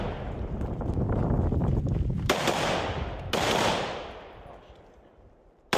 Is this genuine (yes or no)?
yes